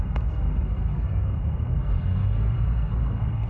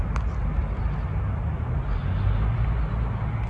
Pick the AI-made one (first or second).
first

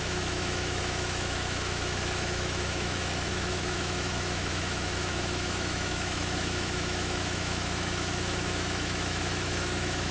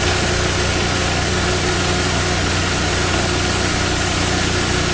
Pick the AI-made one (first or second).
first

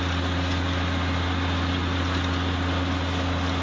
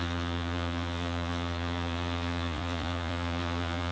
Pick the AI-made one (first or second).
second